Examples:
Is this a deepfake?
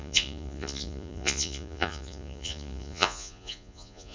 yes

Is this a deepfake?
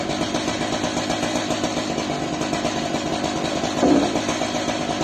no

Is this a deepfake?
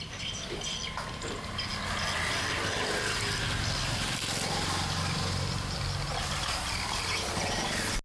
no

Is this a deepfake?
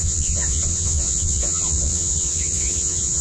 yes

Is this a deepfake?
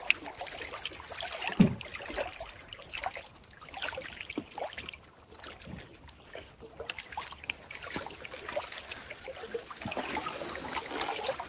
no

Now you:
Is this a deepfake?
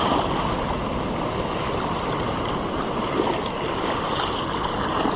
no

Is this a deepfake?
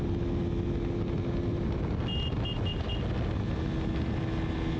no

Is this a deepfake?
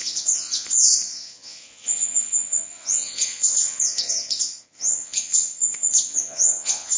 yes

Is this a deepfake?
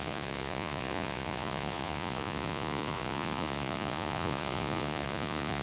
yes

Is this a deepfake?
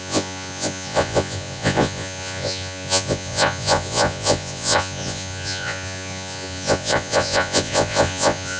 yes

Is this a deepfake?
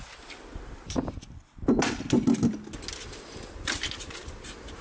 no